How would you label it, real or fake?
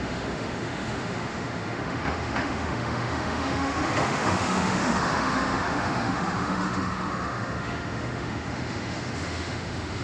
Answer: fake